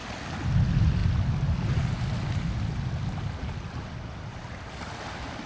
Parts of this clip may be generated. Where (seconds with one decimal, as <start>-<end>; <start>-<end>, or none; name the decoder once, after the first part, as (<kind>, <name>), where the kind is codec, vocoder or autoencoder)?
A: none